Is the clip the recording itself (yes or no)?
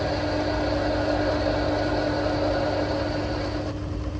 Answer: yes